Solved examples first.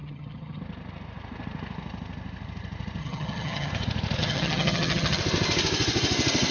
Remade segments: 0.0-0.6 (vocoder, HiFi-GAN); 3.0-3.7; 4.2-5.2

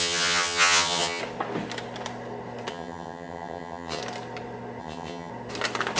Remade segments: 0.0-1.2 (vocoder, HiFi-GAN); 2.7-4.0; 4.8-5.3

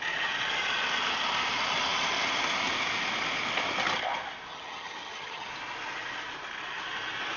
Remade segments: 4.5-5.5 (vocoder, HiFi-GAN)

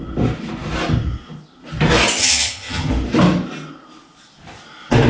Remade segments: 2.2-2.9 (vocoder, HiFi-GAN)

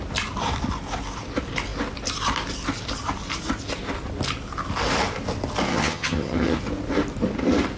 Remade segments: 5.7-6.6 (vocoder, HiFi-GAN)